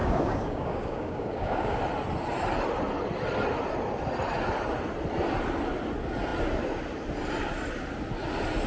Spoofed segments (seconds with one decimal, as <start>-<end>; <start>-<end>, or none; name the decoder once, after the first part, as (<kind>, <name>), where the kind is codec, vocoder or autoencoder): 0.0-1.8 (codec, DAC)